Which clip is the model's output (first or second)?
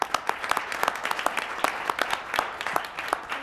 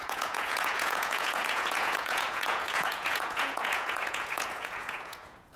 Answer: second